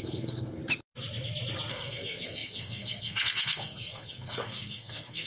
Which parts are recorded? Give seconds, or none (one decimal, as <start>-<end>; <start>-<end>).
0.6-1.7